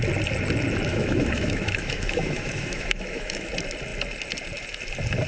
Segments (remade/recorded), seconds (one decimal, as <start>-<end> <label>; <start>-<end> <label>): 0.0-0.9 recorded; 0.9-3.5 remade; 3.5-5.3 recorded